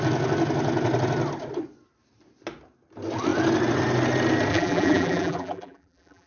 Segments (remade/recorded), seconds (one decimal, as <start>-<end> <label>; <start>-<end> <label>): 0.0-4.5 recorded; 4.5-6.3 remade